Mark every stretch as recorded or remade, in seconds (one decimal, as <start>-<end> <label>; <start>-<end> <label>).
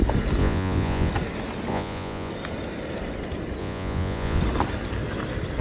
0.0-0.4 recorded; 0.4-1.1 remade; 1.1-1.7 recorded; 1.7-2.3 remade; 2.3-3.6 recorded; 3.6-4.4 remade; 4.4-5.6 recorded